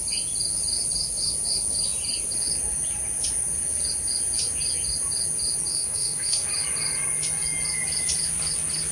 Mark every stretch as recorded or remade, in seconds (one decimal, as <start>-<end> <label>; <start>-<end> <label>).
0.0-5.7 recorded; 5.7-6.5 remade; 6.5-8.9 recorded